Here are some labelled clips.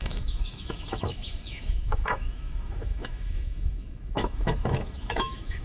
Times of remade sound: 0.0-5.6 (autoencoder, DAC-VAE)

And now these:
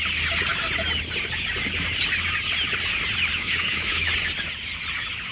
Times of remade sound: 3.3-4.1 (autoencoder, DAC-VAE)

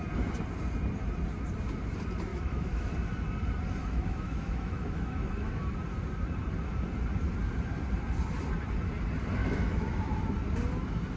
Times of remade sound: 2.3-2.9 (autoencoder, DAC-VAE); 3.8-5.5; 9.4-10.0

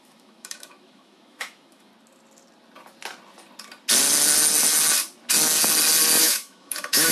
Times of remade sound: 0.0-1.9 (autoencoder, DAC-VAE); 6.2-7.1

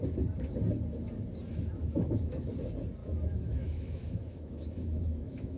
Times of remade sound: 1.5-2.5 (autoencoder, DAC-VAE); 3.0-5.6